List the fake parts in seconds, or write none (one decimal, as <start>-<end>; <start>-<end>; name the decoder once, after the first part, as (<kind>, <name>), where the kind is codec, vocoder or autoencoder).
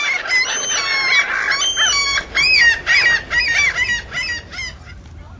none